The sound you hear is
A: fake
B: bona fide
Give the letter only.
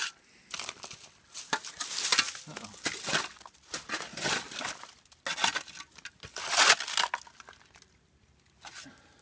B